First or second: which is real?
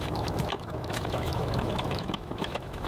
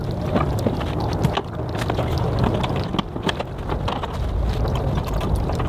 second